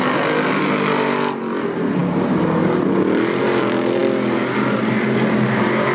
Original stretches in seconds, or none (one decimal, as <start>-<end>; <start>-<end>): 0.0-5.9